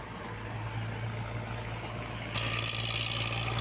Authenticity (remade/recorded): recorded